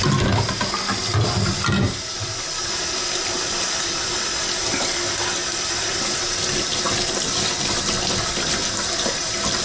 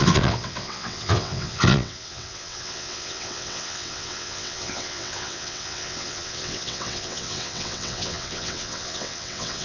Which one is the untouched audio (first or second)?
first